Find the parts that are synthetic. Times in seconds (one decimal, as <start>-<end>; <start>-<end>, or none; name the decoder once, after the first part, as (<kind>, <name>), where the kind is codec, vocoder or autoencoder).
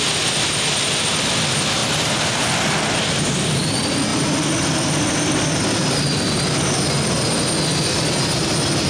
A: none